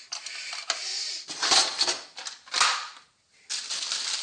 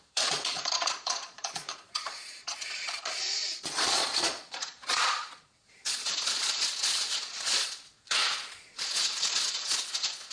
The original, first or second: first